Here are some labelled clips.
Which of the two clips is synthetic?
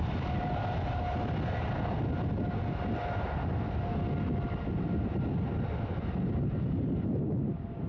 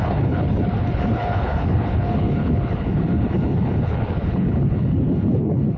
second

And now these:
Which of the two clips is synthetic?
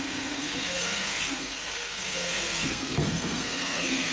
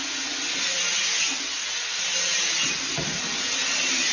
first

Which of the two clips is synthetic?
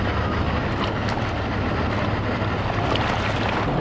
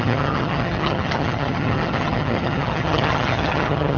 second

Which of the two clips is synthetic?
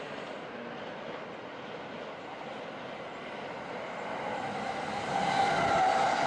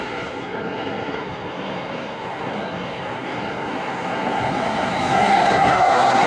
second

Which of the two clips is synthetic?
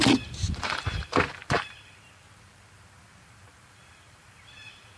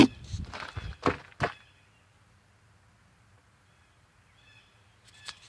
first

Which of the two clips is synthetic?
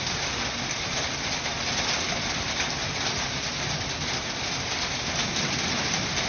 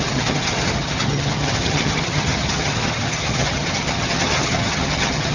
second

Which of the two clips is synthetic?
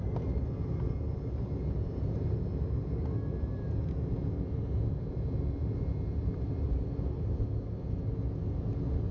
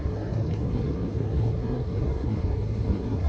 second